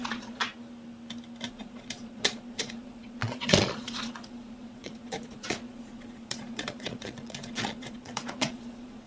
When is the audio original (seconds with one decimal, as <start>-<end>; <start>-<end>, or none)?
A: 0.5-1.5